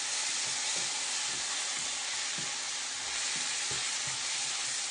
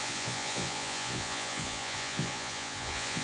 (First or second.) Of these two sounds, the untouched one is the first